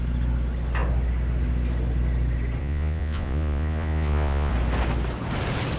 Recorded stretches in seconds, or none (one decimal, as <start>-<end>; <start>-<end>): 0.0-2.6; 4.5-5.8